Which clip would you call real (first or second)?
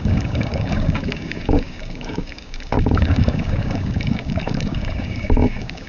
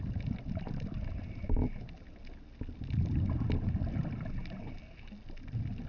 second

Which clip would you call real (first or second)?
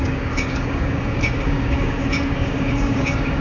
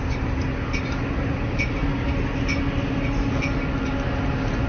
second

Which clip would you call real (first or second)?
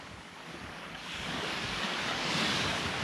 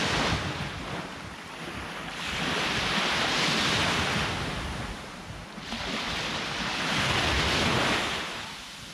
second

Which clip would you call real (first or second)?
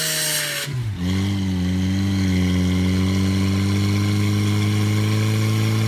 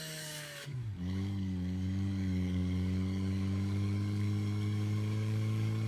first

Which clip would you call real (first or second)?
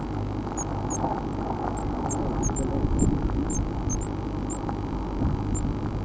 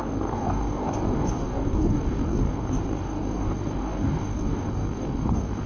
first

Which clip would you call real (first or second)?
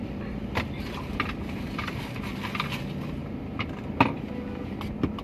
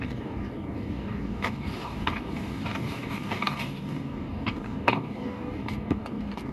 first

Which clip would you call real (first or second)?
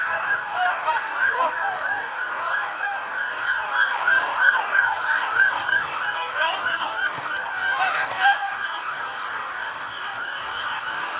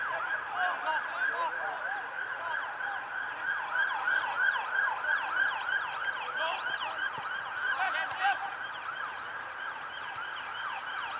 second